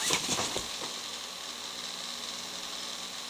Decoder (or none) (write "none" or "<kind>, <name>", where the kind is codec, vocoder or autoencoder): none